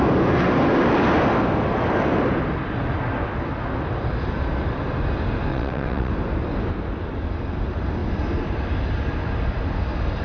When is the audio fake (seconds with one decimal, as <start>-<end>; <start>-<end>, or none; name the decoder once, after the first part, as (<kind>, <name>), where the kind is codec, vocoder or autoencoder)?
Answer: 5.5-6.1 (vocoder, WaveNeXt)